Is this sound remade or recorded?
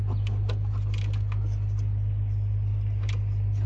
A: recorded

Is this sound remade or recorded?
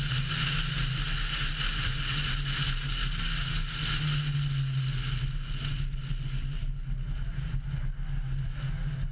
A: recorded